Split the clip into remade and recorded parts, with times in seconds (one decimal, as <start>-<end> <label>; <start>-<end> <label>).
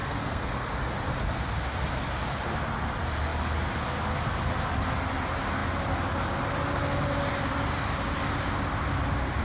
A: 0.0-0.7 remade; 0.7-9.4 recorded